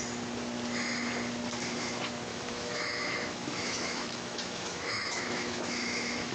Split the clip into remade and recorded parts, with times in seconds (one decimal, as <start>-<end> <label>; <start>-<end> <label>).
0.0-2.3 recorded; 2.3-6.3 remade